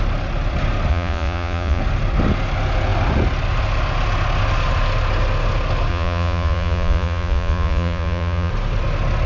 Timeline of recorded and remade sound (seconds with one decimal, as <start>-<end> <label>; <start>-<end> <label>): 0.0-0.9 recorded; 0.9-1.8 remade; 1.8-5.9 recorded; 5.9-8.5 remade; 8.5-9.3 recorded